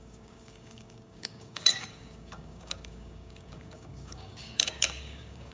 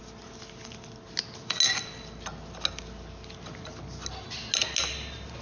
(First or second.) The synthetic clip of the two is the first